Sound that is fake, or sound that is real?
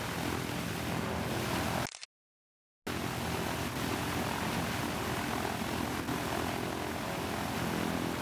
real